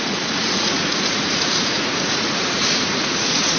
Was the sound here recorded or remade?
remade